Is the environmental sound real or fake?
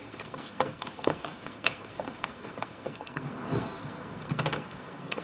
fake